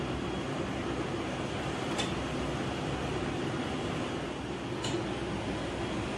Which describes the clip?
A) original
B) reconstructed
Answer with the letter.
A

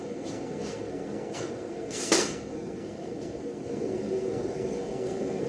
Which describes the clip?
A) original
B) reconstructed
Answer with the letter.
B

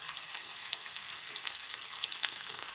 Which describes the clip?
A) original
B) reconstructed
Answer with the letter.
B